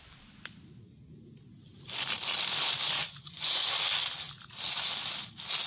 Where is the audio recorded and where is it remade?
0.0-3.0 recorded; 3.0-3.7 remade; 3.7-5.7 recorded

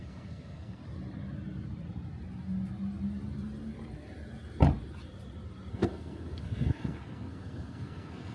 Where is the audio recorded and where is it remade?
0.0-0.8 remade; 0.8-5.7 recorded; 5.7-8.3 remade

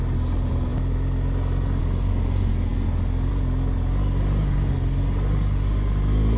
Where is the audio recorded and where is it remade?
0.0-6.4 recorded

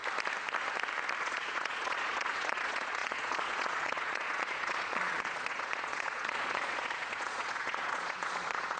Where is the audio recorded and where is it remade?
0.0-1.2 recorded; 1.2-8.8 remade

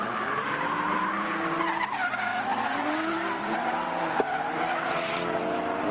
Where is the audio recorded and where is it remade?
0.0-2.3 recorded; 2.3-5.9 remade

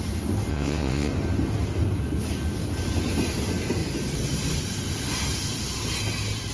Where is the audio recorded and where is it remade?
0.0-0.5 recorded; 0.5-1.1 remade; 1.1-6.5 recorded

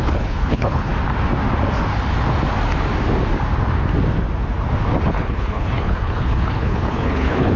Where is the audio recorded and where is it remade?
0.0-0.9 remade; 0.9-5.1 recorded; 5.1-7.6 remade